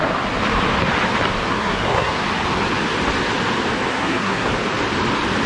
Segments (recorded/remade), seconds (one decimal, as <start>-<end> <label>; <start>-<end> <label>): 0.0-1.5 recorded; 1.5-2.2 remade; 2.2-3.9 recorded; 3.9-4.5 remade; 4.5-5.5 recorded